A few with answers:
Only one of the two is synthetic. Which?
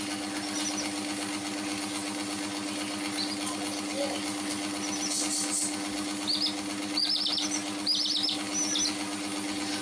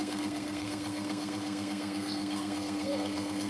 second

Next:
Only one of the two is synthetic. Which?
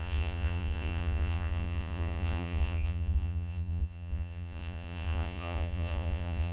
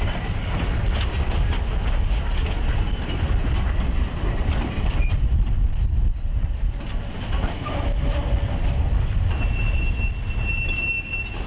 first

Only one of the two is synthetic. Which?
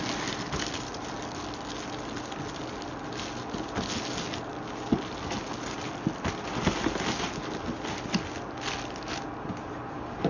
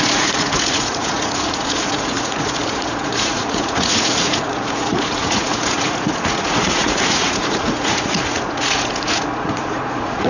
second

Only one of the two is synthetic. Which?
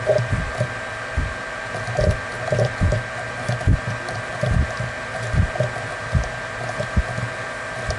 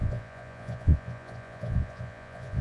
second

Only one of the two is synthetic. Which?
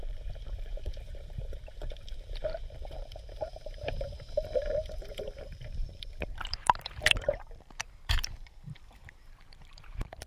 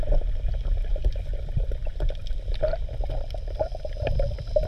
first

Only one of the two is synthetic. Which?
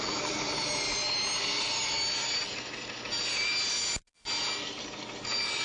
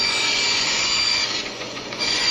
second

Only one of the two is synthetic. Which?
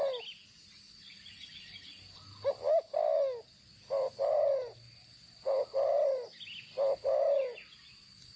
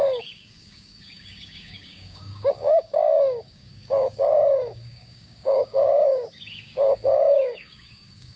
second